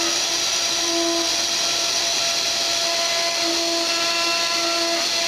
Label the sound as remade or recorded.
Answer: recorded